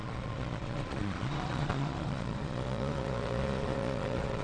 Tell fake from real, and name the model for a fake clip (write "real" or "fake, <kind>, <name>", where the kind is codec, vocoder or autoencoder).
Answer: fake, vocoder, Vocos